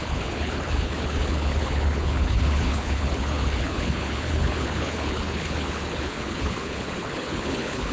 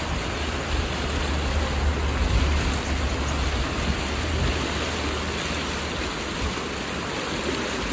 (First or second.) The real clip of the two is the second